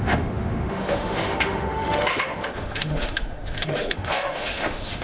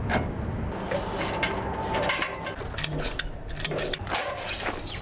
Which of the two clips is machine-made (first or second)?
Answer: first